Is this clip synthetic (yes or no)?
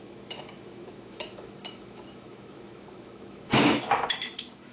yes